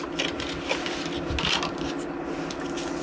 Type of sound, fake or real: real